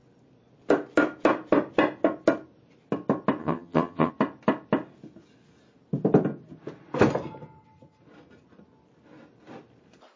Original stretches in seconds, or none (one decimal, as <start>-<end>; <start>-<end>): 0.0-3.4; 4.1-10.2